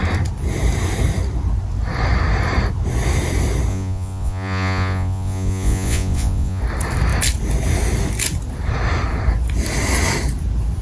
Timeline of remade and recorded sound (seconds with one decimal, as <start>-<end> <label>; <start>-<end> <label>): 0.0-3.7 recorded; 3.7-6.6 remade; 6.6-10.8 recorded